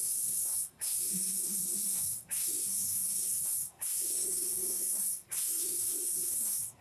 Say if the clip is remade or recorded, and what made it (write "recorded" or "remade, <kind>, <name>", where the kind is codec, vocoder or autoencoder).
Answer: remade, codec, SNAC